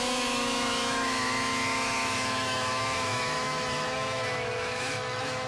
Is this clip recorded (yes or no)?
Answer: no